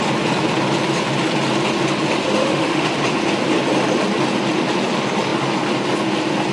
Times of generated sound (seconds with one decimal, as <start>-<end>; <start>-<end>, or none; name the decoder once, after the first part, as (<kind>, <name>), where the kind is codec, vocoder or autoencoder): 2.4-2.9 (autoencoder, DAC-VAE)